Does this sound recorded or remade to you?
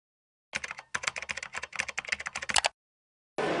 recorded